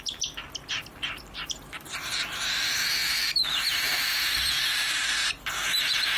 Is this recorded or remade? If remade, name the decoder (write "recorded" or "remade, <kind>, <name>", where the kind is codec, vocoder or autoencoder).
remade, vocoder, BigVGAN v2